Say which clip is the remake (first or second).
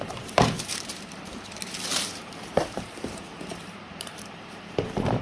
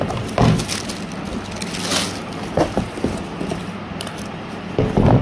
first